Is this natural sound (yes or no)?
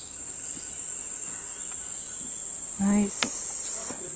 yes